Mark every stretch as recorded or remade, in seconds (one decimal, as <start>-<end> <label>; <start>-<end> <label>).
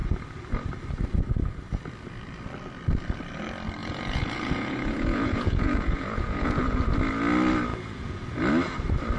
0.0-3.8 recorded; 3.8-6.8 remade; 6.8-7.7 recorded; 7.7-8.2 remade; 8.2-9.2 recorded